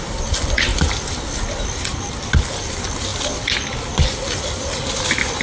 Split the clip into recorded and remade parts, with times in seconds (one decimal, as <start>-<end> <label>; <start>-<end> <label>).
0.0-5.4 recorded